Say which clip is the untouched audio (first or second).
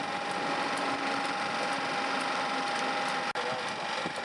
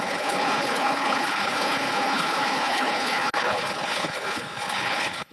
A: first